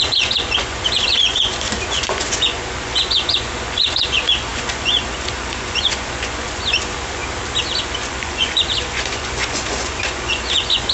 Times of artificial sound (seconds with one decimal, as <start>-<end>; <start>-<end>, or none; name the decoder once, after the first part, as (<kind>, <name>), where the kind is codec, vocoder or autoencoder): 0.0-7.2 (vocoder, Vocos); 7.8-10.9